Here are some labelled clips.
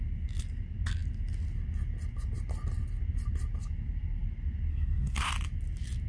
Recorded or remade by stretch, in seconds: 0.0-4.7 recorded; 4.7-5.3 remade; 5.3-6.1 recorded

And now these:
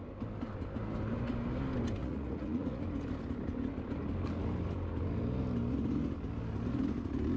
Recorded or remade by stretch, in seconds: 0.0-2.0 recorded; 2.0-2.8 remade; 2.8-7.4 recorded

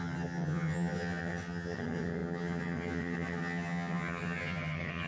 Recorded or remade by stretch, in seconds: 0.0-5.1 remade

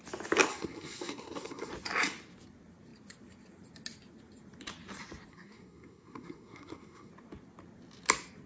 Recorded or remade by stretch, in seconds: 0.0-0.5 recorded; 0.5-1.7 remade; 1.7-5.3 recorded; 5.3-7.1 remade; 7.1-8.5 recorded

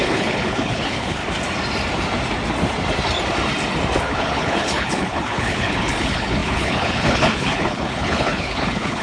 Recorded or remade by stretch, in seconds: 0.0-1.2 remade; 1.2-4.0 recorded; 4.0-9.0 remade

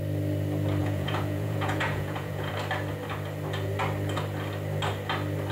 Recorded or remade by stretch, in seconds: 0.0-0.8 recorded; 0.8-2.5 remade; 2.5-5.5 recorded